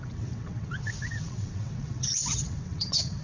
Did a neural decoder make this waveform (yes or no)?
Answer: yes